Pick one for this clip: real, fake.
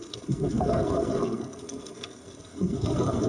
fake